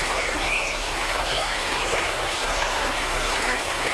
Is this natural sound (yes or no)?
no